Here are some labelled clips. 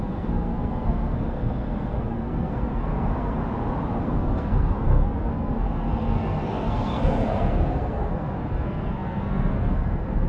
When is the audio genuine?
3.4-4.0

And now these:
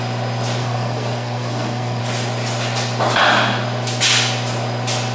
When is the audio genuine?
0.0-0.6; 2.0-5.1

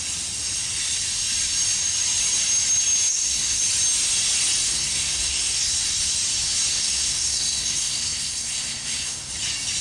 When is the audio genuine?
0.0-3.1; 3.6-4.7; 5.6-6.7; 9.3-9.8

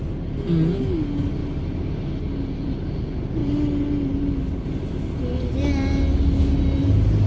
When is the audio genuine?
0.0-7.3

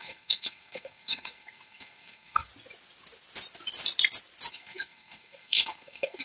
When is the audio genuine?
2.5-4.5